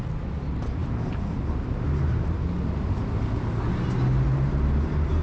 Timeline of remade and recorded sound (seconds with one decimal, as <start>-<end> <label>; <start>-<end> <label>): 0.0-5.2 recorded